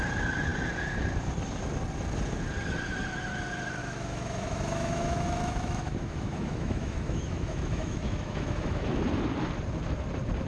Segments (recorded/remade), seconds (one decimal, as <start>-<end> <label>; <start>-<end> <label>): 0.0-3.8 recorded; 3.8-9.0 remade; 9.0-10.5 recorded